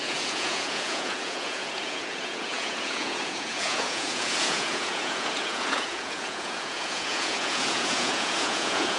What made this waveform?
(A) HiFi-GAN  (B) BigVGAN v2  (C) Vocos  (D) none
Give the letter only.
C